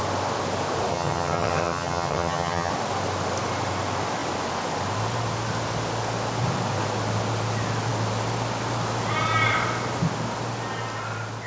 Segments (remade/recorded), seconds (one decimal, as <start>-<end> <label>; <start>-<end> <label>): 0.0-0.9 recorded; 0.9-2.7 remade; 2.7-11.5 recorded